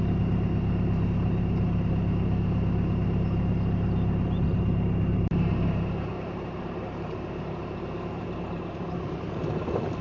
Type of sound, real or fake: real